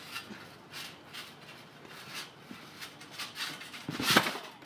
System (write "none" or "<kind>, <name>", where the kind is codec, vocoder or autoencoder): none